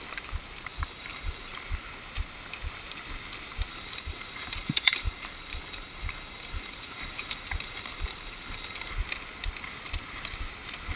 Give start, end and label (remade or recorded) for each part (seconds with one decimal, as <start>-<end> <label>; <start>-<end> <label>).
0.0-0.7 recorded; 0.7-1.5 remade; 1.5-3.7 recorded; 3.7-8.9 remade; 8.9-11.0 recorded